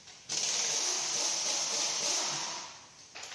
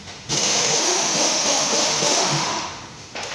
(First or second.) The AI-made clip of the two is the second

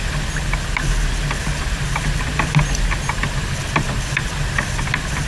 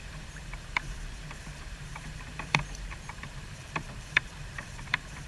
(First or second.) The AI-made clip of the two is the second